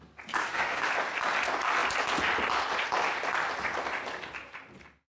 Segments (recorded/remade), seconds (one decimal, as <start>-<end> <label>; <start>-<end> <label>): 0.0-0.4 recorded; 0.4-0.9 remade; 0.9-5.1 recorded